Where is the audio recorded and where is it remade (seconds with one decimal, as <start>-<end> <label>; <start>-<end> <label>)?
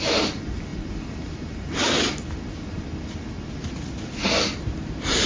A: 0.0-5.3 recorded